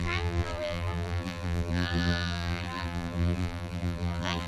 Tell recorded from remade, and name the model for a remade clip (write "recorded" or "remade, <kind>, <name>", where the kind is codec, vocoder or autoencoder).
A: remade, vocoder, BigVGAN v2